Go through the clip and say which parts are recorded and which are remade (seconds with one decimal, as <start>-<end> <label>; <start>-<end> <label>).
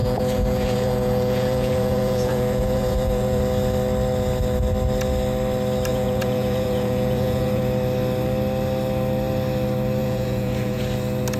0.0-3.4 remade; 3.4-5.9 recorded; 5.9-7.6 remade; 7.6-10.0 recorded; 10.0-10.8 remade; 10.8-11.4 recorded